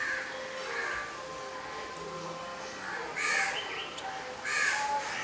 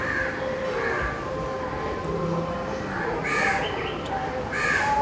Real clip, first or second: first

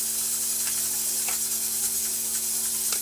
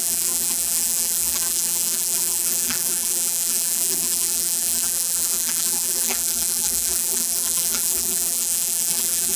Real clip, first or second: first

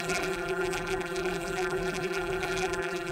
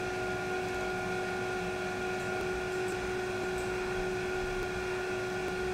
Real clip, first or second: second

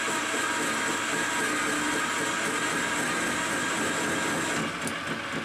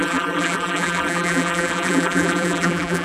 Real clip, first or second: first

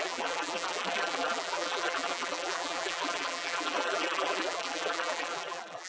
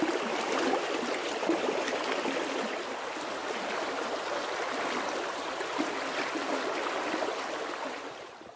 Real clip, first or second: second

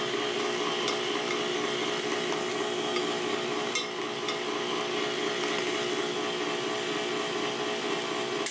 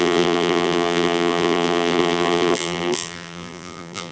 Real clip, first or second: first